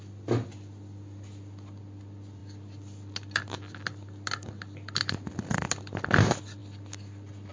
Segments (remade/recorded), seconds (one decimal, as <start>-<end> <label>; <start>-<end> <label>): 0.0-7.5 recorded